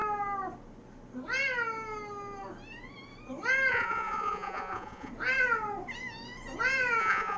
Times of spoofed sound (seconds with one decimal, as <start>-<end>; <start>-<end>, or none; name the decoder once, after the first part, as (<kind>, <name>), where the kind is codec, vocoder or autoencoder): 3.7-5.1 (vocoder, Vocos); 7.0-7.4